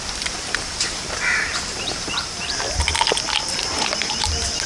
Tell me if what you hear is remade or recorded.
remade